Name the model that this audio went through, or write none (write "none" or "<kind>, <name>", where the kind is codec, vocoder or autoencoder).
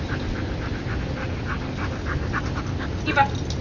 none